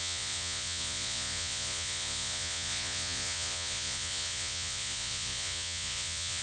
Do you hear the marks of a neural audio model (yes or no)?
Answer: yes